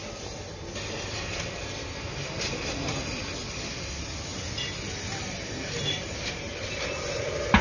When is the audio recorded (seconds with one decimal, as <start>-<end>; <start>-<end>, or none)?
0.0-7.6